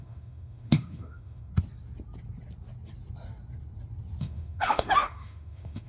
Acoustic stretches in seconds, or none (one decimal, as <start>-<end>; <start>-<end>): 1.5-4.2